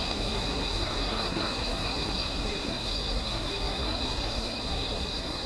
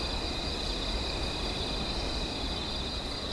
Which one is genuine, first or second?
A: second